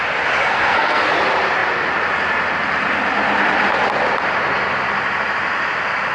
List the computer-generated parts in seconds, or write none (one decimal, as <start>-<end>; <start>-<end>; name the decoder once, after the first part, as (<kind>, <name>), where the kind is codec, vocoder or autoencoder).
0.4-1.1 (codec, SNAC)